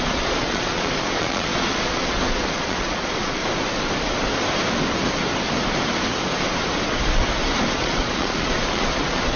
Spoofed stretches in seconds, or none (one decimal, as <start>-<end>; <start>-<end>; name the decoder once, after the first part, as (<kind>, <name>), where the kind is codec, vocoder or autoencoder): 0.0-3.4 (vocoder, Vocos); 7.7-9.4